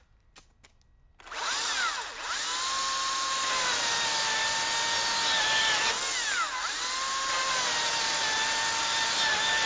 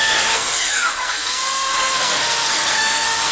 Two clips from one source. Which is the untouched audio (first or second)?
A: first